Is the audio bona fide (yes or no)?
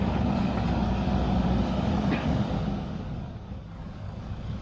no